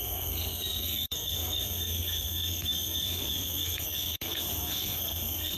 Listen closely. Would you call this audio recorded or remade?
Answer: remade